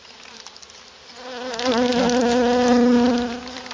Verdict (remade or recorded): recorded